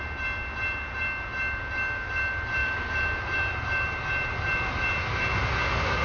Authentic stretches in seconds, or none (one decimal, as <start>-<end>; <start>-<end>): 0.0-2.6; 4.7-6.0